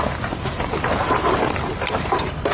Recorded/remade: remade